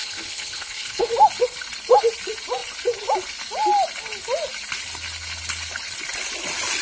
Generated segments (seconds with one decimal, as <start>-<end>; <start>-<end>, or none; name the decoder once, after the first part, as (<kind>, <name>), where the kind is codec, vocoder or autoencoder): 0.0-1.1 (codec, HILCodec)